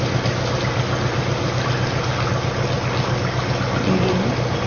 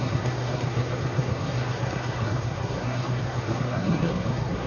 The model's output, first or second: second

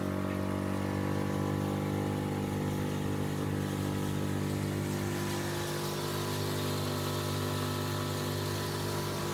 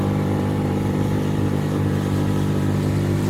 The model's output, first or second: second